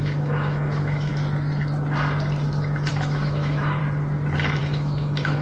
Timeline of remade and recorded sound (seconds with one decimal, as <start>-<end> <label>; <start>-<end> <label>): 0.0-1.1 remade; 1.1-2.9 recorded; 2.9-3.8 remade; 3.8-4.6 recorded; 4.6-5.4 remade

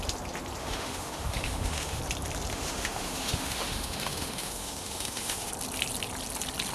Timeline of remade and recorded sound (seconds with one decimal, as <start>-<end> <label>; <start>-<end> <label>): 0.0-0.6 recorded; 0.6-2.0 remade; 2.0-2.5 recorded; 2.5-5.5 remade; 5.5-6.7 recorded

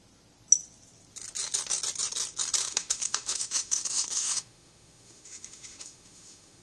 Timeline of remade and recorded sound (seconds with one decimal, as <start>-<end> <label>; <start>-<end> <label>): 0.0-2.6 recorded; 2.6-6.6 remade

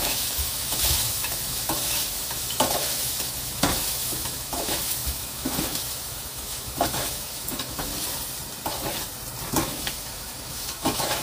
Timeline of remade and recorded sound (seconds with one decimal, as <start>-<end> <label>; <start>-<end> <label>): 0.0-7.9 remade; 7.9-9.5 recorded; 9.5-11.2 remade

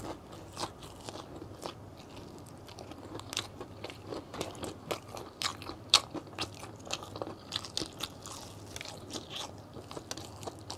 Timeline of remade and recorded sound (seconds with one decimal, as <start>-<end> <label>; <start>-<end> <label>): 0.0-10.8 recorded

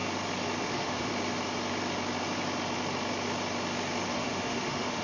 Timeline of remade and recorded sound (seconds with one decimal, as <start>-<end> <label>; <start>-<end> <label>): 0.0-0.6 recorded; 0.6-1.1 remade; 1.1-4.1 recorded; 4.1-5.0 remade

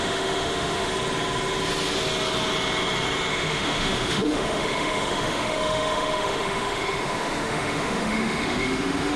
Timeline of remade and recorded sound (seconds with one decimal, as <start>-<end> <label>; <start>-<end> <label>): 0.0-0.9 remade; 0.9-3.3 recorded; 3.3-9.2 remade